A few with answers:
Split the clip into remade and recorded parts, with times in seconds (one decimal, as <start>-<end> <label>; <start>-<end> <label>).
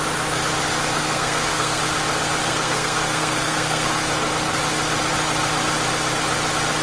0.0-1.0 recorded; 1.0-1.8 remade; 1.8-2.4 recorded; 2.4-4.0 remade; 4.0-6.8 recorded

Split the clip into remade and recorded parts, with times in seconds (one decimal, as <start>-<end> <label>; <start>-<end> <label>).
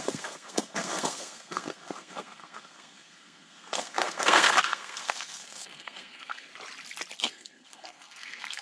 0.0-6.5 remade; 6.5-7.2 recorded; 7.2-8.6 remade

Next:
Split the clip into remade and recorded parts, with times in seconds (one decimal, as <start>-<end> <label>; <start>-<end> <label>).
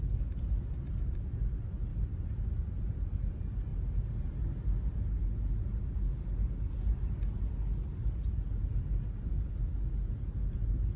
0.0-11.0 recorded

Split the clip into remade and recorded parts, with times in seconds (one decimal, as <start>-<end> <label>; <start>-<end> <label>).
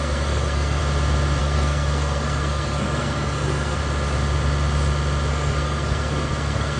0.0-0.8 remade; 0.8-1.4 recorded; 1.4-3.8 remade; 3.8-5.3 recorded; 5.3-6.8 remade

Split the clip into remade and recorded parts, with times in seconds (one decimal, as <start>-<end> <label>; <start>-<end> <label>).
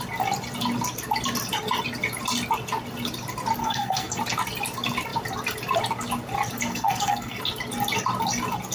0.0-3.6 recorded; 3.6-4.2 remade; 4.2-6.7 recorded; 6.7-7.4 remade; 7.4-8.7 recorded